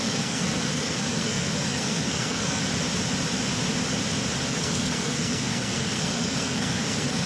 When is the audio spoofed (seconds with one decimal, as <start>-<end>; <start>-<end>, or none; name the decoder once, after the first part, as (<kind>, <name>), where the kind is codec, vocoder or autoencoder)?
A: 0.0-2.6 (codec, SNAC); 4.5-7.3